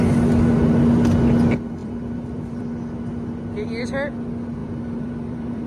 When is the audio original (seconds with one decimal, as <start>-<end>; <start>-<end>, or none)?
0.0-1.8; 2.6-4.6